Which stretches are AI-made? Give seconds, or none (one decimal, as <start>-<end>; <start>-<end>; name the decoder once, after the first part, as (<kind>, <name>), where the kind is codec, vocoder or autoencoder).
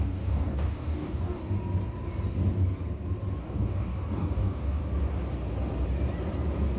0.0-1.4 (codec, DAC); 3.4-4.8